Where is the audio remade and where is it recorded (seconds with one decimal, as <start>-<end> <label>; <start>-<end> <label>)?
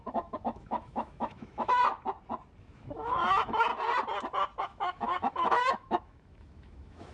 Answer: 0.0-1.8 remade; 1.8-2.6 recorded; 2.6-3.7 remade; 3.7-4.6 recorded; 4.6-7.1 remade